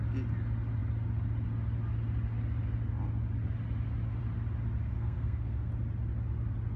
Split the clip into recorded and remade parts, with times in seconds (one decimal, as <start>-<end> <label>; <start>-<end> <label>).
0.0-4.8 recorded; 4.8-5.7 remade; 5.7-6.8 recorded